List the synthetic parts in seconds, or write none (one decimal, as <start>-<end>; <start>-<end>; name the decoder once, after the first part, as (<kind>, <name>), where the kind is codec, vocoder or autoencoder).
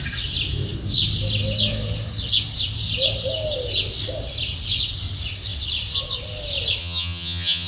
6.8-7.7 (vocoder, HiFi-GAN)